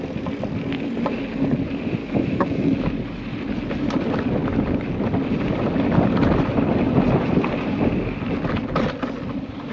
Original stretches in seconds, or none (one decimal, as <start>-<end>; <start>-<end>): 0.0-2.0; 2.9-9.7